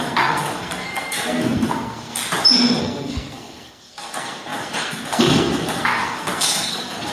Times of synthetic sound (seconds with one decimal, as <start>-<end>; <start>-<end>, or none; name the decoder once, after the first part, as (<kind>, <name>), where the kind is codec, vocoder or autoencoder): 0.0-2.2 (codec, SNAC); 2.8-7.1